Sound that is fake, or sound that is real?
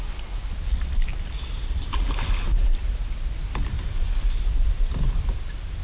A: real